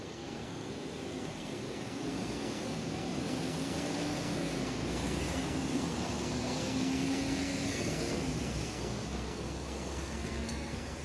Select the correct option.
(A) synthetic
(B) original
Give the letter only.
A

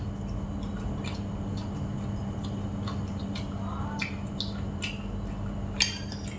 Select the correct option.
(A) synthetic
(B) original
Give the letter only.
B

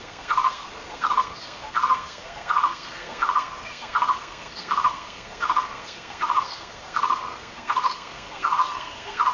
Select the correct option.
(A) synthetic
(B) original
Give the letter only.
A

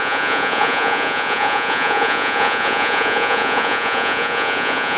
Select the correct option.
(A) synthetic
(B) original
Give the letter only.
A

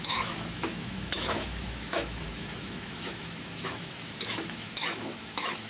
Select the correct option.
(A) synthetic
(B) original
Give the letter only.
A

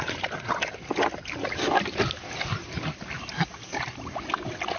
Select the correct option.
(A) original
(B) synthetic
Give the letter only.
A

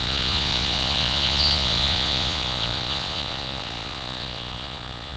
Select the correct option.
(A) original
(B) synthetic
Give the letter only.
B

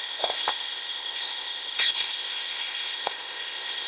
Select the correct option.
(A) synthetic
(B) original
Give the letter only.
A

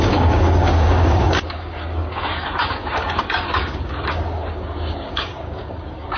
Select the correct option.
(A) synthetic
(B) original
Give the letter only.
A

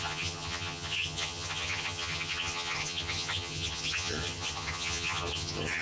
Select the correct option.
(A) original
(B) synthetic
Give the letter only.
B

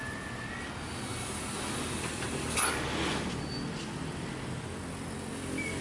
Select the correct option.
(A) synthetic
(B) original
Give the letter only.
B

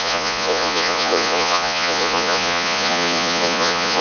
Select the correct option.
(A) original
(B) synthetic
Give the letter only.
B